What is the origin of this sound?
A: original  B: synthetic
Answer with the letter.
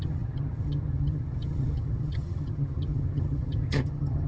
B